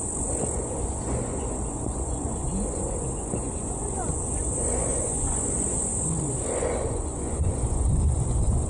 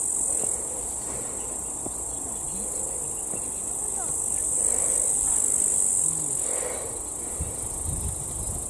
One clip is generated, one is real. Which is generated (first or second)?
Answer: first